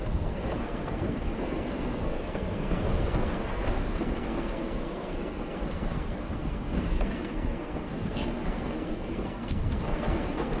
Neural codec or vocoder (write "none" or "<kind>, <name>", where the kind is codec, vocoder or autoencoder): codec, SNAC